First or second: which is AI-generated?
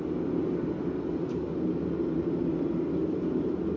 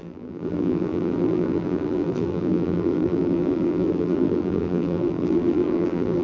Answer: second